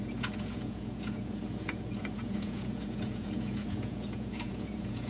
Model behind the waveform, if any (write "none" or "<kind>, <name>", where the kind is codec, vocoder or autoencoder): vocoder, Vocos